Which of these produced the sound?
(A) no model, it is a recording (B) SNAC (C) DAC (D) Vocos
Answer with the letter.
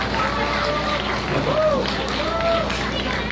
A